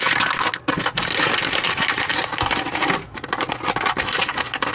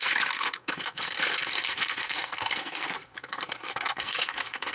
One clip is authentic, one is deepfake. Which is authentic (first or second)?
first